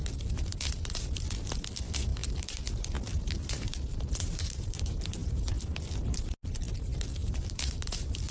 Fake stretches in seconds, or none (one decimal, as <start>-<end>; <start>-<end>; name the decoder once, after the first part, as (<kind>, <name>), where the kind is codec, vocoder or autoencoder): 2.1-2.7 (vocoder, BigVGAN v2); 3.1-5.5; 7.2-8.3